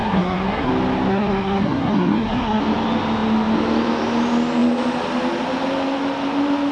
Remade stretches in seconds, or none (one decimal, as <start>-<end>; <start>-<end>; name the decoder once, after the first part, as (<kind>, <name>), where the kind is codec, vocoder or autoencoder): 0.0-0.7 (codec, SNAC); 1.1-2.6